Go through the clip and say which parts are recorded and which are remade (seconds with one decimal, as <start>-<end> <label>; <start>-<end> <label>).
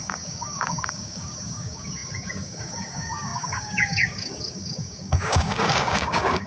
0.0-6.5 remade